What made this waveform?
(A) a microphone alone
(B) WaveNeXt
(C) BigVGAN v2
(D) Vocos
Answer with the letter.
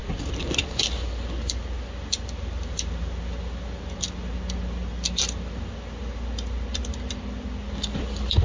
A